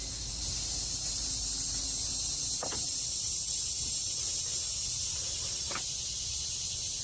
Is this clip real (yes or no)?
yes